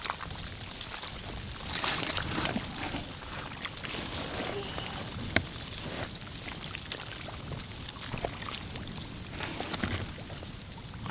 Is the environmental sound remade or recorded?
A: recorded